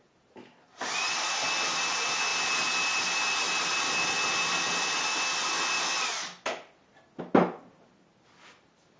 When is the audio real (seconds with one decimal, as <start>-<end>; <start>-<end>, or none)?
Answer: 0.0-9.0